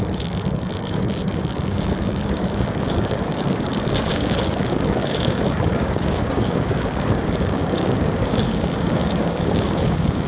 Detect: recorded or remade remade